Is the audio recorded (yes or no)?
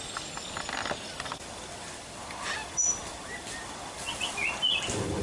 yes